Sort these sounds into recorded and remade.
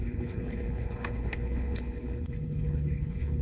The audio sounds remade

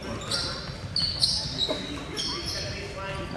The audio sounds recorded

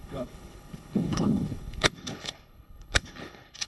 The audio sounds remade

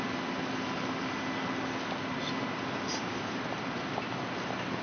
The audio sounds recorded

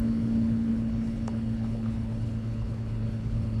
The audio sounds remade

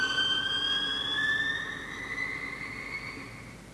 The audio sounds recorded